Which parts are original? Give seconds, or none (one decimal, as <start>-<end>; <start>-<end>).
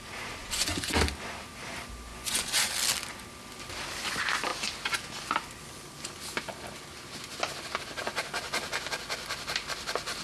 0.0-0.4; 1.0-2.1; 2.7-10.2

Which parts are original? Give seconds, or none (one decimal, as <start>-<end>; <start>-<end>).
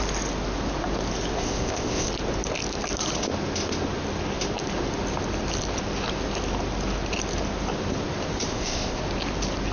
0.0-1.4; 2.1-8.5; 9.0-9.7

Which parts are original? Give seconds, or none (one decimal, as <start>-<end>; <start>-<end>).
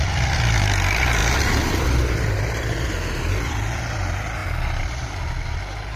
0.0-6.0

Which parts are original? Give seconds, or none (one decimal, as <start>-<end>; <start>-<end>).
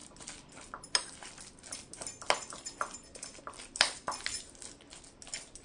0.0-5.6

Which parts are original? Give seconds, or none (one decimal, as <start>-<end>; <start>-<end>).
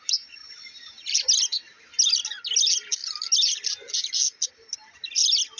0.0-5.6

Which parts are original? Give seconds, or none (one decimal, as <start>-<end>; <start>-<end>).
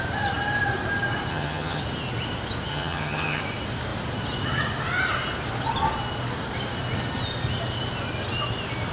0.0-1.3; 1.8-2.7; 3.4-8.9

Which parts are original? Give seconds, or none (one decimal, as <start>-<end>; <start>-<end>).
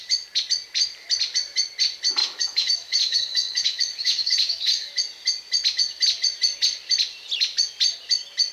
0.0-2.2; 4.9-8.5